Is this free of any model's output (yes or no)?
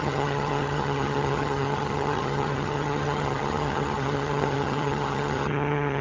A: no